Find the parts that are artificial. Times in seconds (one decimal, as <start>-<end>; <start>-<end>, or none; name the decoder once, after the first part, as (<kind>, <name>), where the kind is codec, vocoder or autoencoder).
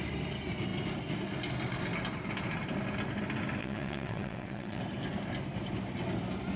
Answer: 3.6-4.8 (vocoder, WaveNeXt)